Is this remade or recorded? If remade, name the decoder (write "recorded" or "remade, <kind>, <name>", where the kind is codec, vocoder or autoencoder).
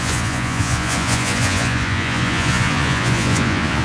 remade, vocoder, Vocos